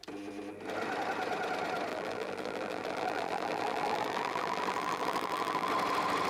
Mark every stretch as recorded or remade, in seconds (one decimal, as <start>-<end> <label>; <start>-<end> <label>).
0.0-1.9 recorded; 1.9-5.7 remade; 5.7-6.3 recorded